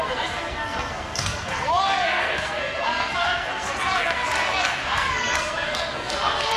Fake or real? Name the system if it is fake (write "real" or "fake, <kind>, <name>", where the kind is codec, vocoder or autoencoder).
fake, codec, SNAC